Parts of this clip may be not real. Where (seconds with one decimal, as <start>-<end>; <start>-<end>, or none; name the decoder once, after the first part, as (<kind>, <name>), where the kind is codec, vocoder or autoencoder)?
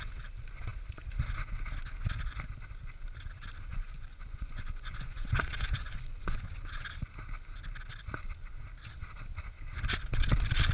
3.7-6.7 (vocoder, Vocos)